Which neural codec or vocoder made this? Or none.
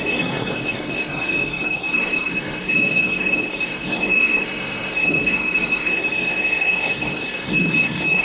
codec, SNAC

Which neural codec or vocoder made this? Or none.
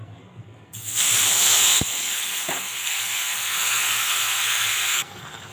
codec, SNAC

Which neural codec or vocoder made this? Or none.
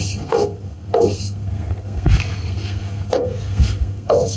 codec, SNAC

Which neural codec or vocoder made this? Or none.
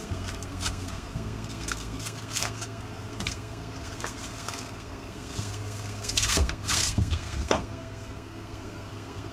codec, SNAC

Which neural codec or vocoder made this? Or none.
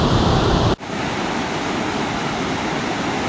none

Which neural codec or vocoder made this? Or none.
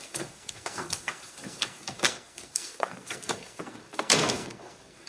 codec, SNAC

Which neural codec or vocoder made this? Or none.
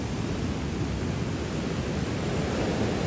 none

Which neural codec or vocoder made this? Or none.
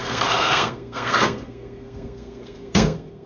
codec, SNAC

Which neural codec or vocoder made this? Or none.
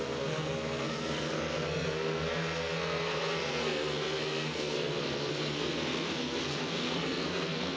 codec, SNAC